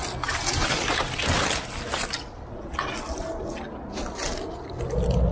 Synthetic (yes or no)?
no